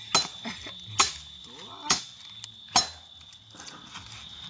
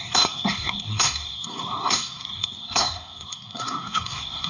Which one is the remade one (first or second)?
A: second